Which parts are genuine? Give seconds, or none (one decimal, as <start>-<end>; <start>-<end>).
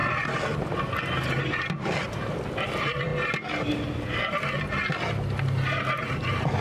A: 0.0-1.4; 3.1-6.1